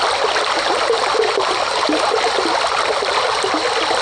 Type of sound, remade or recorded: recorded